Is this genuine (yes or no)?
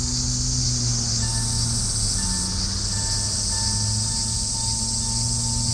yes